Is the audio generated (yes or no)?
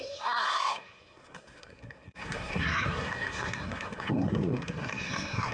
yes